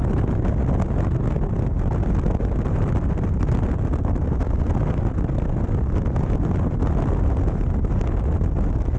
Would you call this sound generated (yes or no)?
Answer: no